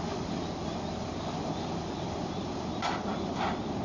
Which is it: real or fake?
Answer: real